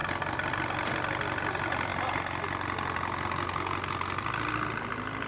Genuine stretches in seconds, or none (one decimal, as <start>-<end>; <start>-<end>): 0.0-5.3